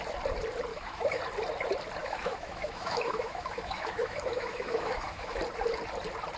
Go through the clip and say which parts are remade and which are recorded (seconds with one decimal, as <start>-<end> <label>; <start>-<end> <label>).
0.0-0.7 recorded; 0.7-1.2 remade; 1.2-2.0 recorded; 2.0-5.4 remade; 5.4-6.4 recorded